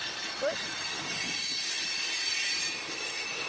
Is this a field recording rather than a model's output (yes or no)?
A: no